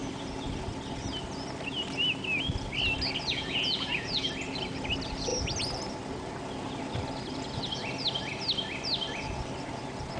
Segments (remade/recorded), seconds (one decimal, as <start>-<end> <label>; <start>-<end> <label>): 0.0-3.3 recorded; 3.3-4.3 remade; 4.3-10.2 recorded